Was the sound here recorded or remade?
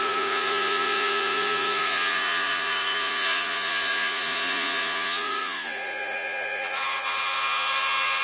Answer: remade